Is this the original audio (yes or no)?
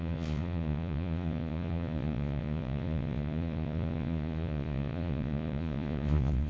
no